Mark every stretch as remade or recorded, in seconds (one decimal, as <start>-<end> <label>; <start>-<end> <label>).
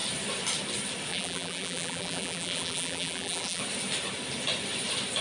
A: 0.0-1.1 recorded; 1.1-3.6 remade; 3.6-5.2 recorded